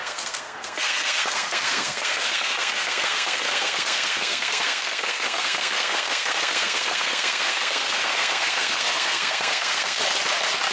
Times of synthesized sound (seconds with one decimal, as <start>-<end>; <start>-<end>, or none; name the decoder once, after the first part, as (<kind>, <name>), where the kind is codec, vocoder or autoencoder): 0.0-10.0 (codec, SNAC)